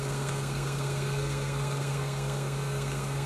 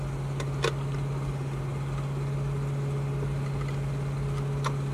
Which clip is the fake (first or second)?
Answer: first